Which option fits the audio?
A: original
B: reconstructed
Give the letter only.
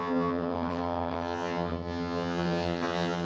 B